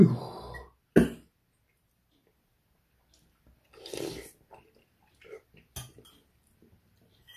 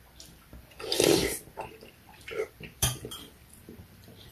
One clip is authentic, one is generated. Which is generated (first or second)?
second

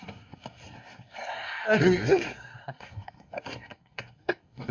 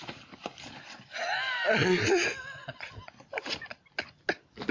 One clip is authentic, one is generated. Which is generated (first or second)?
first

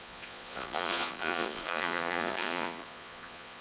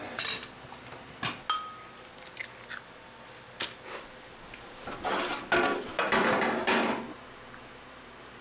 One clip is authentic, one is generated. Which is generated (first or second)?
first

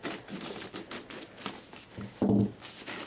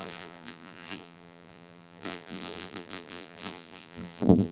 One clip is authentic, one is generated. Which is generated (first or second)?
second